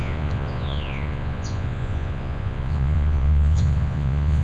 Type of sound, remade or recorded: remade